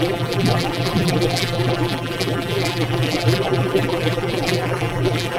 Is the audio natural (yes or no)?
no